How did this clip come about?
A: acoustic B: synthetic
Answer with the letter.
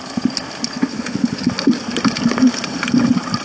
A